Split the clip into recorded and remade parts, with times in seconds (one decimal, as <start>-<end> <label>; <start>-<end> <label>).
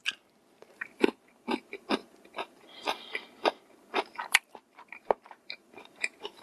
0.0-0.7 recorded; 0.7-6.4 remade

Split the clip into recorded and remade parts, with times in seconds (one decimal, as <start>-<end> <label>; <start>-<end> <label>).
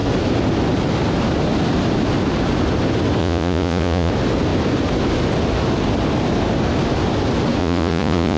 0.0-3.2 recorded; 3.2-4.1 remade; 4.1-7.6 recorded; 7.6-8.4 remade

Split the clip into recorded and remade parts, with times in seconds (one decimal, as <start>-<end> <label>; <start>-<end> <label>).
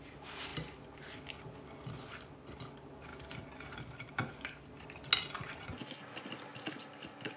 0.0-7.4 recorded